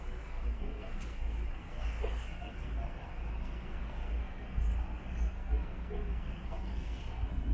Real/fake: fake